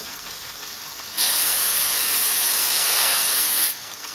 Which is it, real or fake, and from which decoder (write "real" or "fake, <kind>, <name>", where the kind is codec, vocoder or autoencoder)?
fake, codec, SNAC